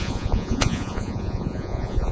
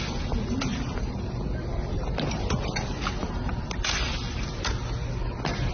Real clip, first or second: second